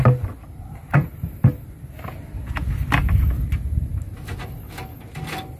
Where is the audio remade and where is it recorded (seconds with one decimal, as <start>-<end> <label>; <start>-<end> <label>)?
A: 0.0-5.6 recorded